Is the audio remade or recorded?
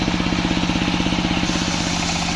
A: recorded